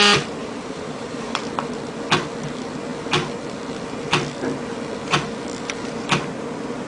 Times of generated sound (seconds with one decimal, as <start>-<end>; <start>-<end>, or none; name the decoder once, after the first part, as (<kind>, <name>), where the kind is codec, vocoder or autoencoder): 0.4-1.4 (vocoder, BigVGAN v2)